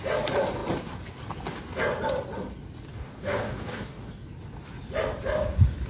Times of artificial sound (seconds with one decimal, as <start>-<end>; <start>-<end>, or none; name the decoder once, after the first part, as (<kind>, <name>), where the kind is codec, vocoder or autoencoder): 2.9-4.2 (codec, DAC)